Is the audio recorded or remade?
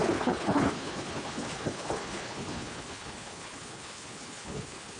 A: remade